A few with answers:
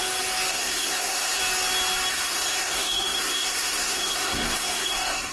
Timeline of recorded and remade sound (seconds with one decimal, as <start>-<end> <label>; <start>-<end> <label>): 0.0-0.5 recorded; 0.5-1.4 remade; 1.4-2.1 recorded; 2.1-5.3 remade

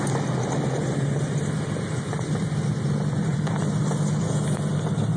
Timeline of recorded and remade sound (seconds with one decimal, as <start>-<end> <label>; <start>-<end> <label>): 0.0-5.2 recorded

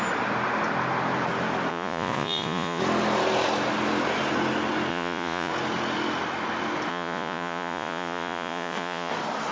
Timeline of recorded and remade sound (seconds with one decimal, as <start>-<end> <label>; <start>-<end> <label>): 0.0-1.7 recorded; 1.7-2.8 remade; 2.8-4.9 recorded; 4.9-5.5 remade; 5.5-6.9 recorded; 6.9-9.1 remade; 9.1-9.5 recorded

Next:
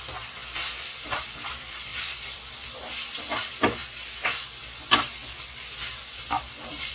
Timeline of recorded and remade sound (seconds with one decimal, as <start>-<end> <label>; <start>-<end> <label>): 0.0-3.8 remade; 3.8-4.8 recorded; 4.8-5.2 remade; 5.2-5.9 recorded; 5.9-6.9 remade

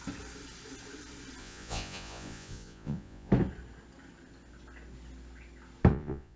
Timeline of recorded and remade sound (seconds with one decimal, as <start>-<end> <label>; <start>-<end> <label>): 0.0-1.4 recorded; 1.4-3.3 remade; 3.3-5.9 recorded; 5.9-6.4 remade

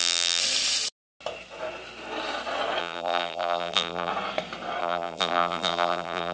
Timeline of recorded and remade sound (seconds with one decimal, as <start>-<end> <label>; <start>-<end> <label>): 0.0-0.4 remade; 0.4-2.8 recorded; 2.8-4.1 remade; 4.1-4.8 recorded; 4.8-6.3 remade